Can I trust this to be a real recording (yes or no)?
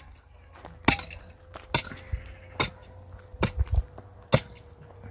yes